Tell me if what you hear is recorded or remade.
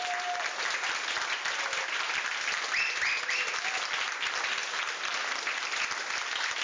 recorded